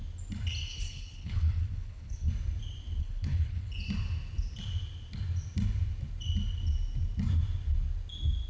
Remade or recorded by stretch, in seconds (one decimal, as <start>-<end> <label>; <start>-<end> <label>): 0.0-0.7 recorded; 0.7-2.3 remade; 2.3-3.0 recorded; 3.0-3.7 remade; 3.7-8.5 recorded